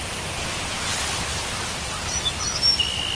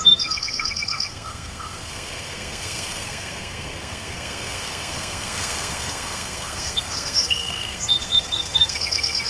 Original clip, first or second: first